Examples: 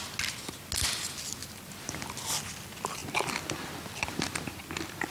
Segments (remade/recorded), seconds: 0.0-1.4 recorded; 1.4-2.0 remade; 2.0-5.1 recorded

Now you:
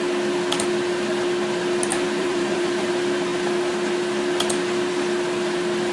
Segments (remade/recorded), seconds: 0.0-1.9 recorded; 1.9-2.9 remade; 2.9-5.9 recorded

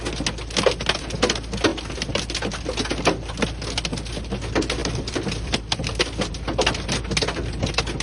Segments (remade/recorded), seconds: 0.0-1.7 recorded; 1.7-2.2 remade; 2.2-4.8 recorded; 4.8-6.3 remade; 6.3-8.0 recorded

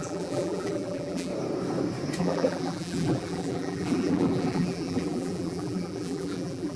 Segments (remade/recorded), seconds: 0.0-1.3 remade; 1.3-2.2 recorded; 2.2-6.8 remade